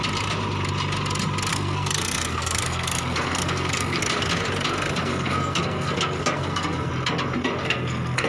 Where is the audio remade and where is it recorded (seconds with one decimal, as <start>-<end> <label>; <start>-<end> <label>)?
0.0-1.5 recorded; 1.5-4.0 remade; 4.0-5.0 recorded; 5.0-6.9 remade; 6.9-7.6 recorded; 7.6-8.3 remade